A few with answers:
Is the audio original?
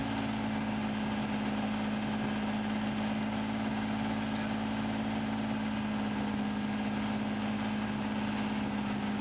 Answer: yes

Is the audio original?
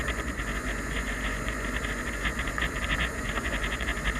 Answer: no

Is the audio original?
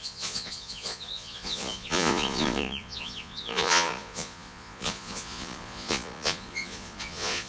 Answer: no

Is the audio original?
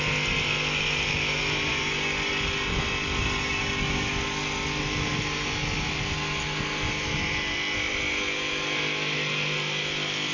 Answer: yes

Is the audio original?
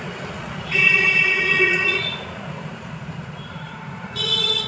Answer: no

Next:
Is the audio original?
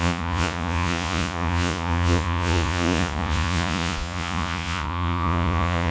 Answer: no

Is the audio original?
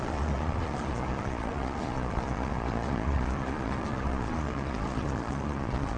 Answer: no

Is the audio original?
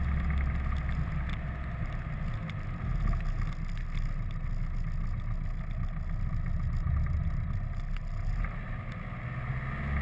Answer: yes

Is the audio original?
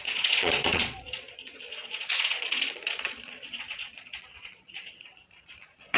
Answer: no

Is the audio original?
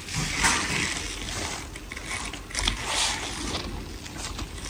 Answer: yes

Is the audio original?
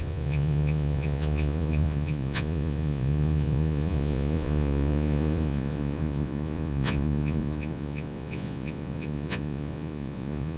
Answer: no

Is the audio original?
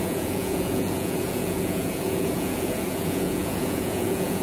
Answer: no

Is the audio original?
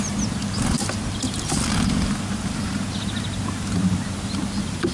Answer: yes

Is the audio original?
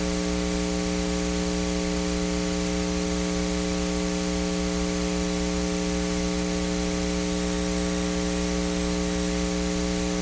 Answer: yes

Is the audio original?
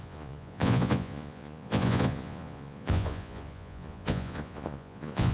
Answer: no